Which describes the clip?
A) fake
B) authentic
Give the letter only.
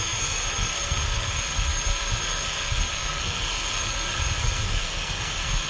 A